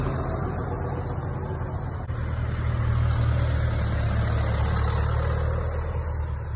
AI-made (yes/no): no